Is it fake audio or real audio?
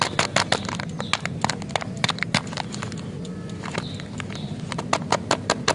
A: real